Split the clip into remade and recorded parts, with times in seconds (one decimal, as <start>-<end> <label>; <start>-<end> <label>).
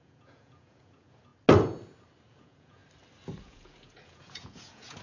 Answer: 0.0-1.3 remade; 1.3-2.3 recorded; 2.3-2.8 remade; 2.8-3.4 recorded; 3.4-5.0 remade